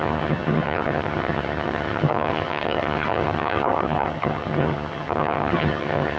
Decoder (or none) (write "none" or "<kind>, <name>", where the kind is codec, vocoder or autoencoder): vocoder, HiFi-GAN